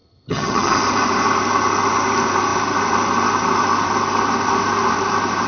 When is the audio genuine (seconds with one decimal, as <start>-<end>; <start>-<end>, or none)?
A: 0.8-5.5